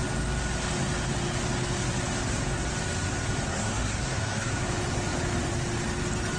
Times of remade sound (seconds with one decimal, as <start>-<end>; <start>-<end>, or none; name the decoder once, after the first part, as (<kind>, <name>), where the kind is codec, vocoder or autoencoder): 3.5-4.5 (codec, SNAC)